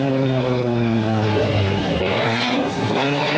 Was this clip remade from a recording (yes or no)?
yes